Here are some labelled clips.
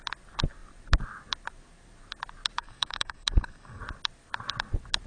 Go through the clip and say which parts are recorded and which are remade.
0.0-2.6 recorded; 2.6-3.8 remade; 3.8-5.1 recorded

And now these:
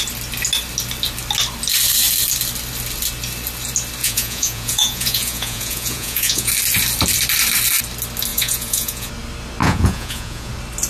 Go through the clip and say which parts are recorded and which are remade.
0.0-4.0 recorded; 4.0-6.5 remade; 6.5-8.3 recorded; 8.3-9.1 remade; 9.1-9.6 recorded; 9.6-10.5 remade; 10.5-10.9 recorded

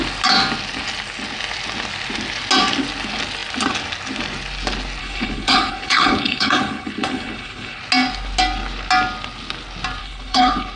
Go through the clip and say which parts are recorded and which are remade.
0.0-5.0 recorded; 5.0-7.8 remade; 7.8-10.0 recorded; 10.0-10.8 remade

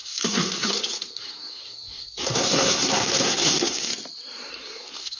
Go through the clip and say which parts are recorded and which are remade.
0.0-3.9 remade; 3.9-4.5 recorded; 4.5-5.2 remade

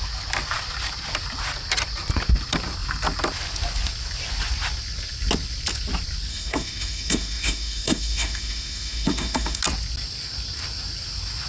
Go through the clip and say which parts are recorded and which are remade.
0.0-6.3 recorded; 6.3-9.6 remade; 9.6-11.5 recorded

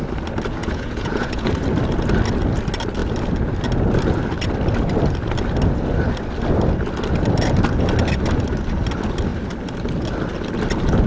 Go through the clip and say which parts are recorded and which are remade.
0.0-0.6 recorded; 0.6-1.5 remade; 1.5-11.1 recorded